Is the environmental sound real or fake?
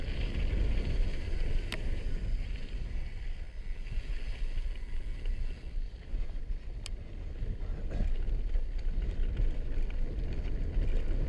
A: real